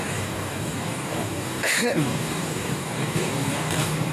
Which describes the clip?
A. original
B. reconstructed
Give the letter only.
B